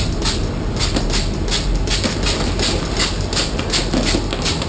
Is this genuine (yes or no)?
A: yes